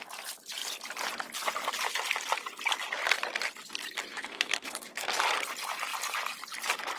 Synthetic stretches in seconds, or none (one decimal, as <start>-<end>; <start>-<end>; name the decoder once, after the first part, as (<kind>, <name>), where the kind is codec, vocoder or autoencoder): 4.1-5.2 (codec, SNAC)